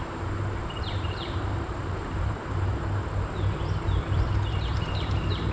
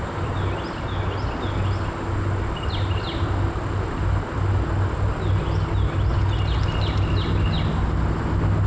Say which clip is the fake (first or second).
first